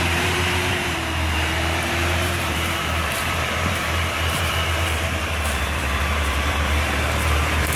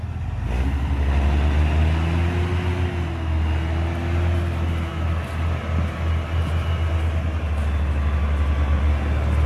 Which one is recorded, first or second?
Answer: second